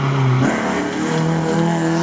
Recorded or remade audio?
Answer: recorded